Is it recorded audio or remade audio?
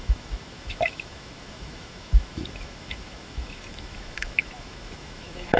remade